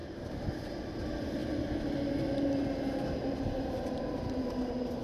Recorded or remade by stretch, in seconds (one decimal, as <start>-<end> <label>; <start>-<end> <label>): 0.0-5.0 recorded